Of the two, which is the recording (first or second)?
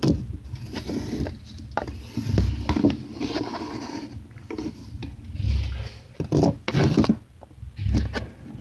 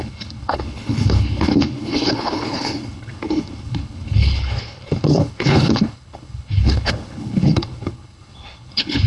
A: first